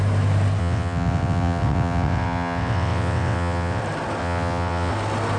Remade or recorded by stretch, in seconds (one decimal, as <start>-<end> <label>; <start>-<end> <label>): 0.0-0.6 recorded; 0.6-3.8 remade; 3.8-4.2 recorded; 4.2-4.9 remade; 4.9-5.4 recorded